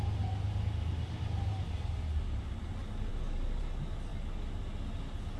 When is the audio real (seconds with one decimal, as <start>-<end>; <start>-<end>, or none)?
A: 0.0-5.4